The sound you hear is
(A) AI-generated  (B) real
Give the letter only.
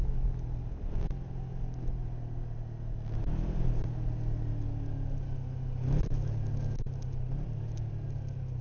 B